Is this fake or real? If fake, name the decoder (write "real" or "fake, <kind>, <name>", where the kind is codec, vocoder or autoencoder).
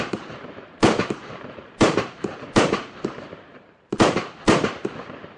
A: fake, vocoder, BigVGAN v2